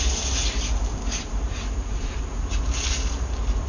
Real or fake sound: fake